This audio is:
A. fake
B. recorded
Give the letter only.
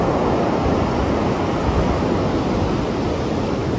B